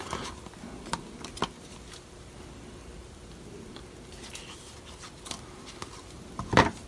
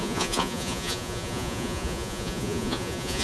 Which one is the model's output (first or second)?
second